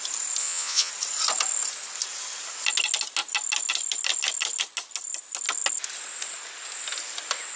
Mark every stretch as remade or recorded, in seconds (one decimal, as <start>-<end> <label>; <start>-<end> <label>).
0.0-0.4 recorded; 0.4-0.9 remade; 0.9-7.6 recorded